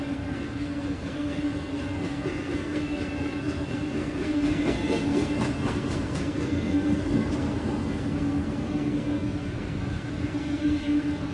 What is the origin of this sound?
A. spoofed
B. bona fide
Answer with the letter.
A